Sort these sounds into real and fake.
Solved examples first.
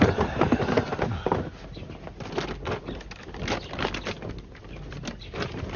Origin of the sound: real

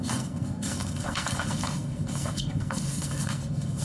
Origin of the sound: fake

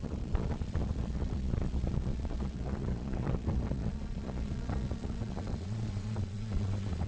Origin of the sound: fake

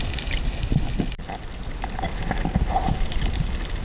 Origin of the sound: real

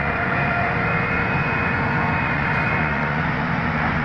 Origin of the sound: fake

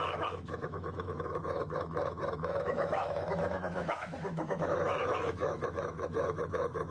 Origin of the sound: fake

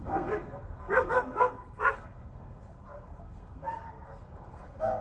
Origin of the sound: fake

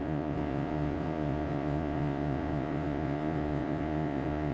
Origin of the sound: fake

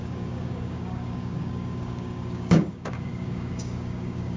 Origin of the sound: fake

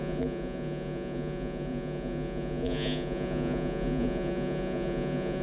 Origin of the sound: fake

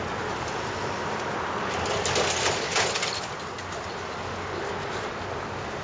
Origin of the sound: real